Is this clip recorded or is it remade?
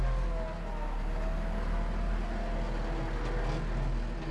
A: recorded